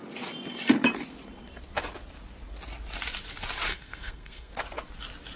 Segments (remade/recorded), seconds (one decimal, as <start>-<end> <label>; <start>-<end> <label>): 0.0-3.7 recorded; 3.7-4.5 remade; 4.5-5.4 recorded